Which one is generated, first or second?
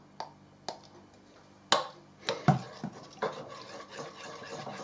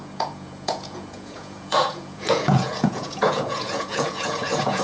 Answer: second